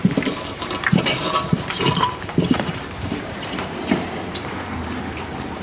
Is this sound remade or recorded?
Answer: remade